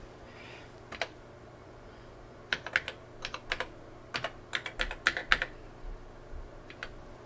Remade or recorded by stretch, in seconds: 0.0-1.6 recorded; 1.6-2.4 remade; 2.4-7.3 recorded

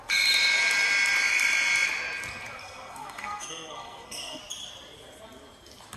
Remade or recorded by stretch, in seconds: 0.0-2.6 recorded; 2.6-4.4 remade; 4.4-6.0 recorded

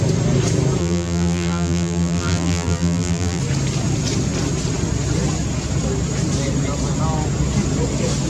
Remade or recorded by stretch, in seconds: 0.0-0.8 recorded; 0.8-3.4 remade; 3.4-8.3 recorded